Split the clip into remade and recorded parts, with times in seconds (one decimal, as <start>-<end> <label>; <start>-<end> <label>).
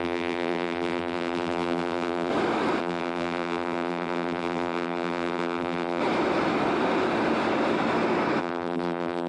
0.0-2.3 remade; 2.3-2.8 recorded; 2.8-6.0 remade; 6.0-8.4 recorded; 8.4-9.3 remade